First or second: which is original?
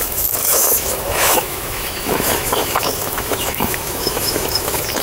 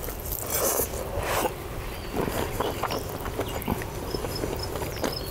second